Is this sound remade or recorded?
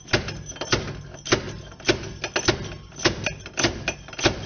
recorded